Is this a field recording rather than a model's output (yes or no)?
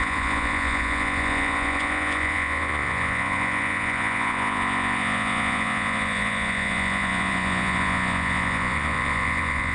no